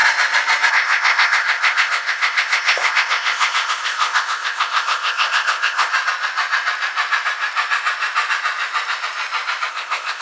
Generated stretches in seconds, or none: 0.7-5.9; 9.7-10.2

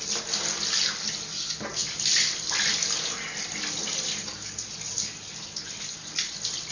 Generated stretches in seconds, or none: none

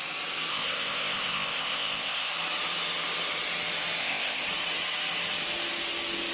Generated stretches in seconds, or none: 0.5-2.3; 4.0-4.5

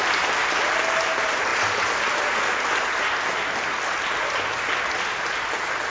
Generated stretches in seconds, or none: none

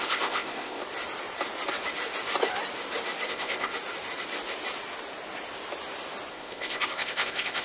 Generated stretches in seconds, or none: 0.0-0.8; 3.3-3.7; 6.3-7.6